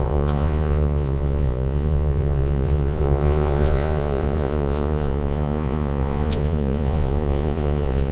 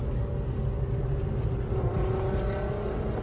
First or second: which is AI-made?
first